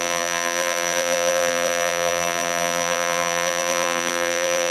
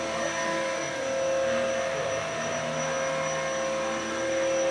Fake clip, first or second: first